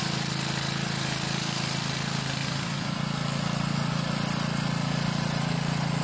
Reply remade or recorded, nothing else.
recorded